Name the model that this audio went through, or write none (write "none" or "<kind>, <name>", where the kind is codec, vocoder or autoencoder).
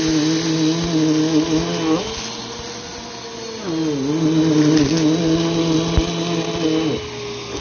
none